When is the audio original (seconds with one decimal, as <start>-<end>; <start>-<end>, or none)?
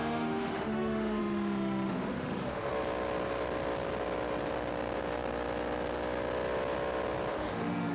2.7-7.3